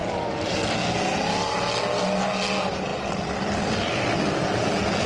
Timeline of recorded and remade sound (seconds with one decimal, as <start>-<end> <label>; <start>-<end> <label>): 0.0-5.1 recorded